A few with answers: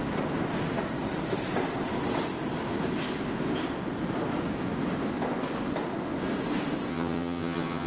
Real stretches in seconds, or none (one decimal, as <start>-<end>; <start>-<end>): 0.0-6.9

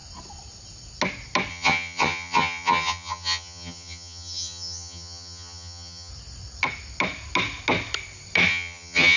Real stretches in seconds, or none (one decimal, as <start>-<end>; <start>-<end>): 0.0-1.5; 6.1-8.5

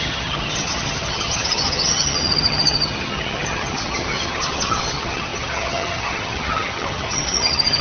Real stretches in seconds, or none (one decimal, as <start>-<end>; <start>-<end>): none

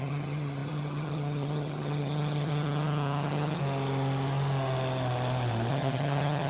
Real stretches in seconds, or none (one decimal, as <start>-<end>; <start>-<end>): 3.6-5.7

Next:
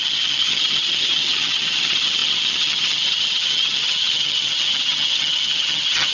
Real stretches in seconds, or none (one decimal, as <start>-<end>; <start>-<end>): none